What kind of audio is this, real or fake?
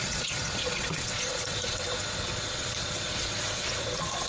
fake